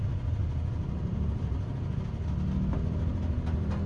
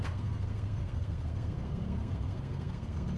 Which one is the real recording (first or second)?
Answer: first